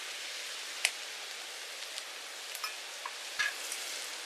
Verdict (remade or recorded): recorded